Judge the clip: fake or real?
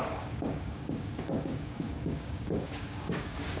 fake